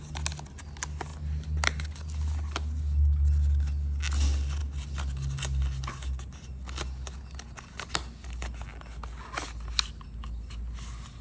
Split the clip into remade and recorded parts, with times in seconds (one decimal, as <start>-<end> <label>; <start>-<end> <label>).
0.0-11.2 recorded